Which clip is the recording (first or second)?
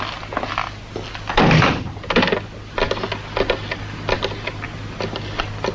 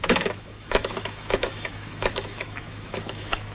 first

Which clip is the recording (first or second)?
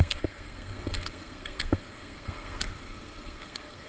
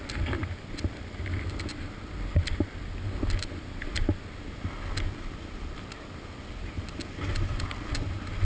second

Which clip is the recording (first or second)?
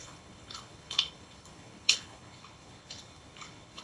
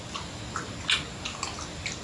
second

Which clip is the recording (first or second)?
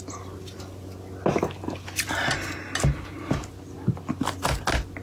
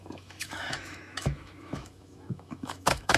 first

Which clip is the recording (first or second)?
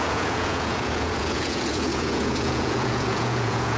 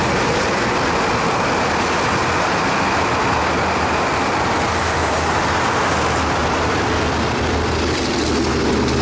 second